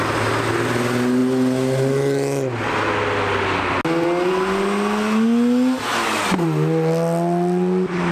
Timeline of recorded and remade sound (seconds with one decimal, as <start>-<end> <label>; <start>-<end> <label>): 0.0-8.1 recorded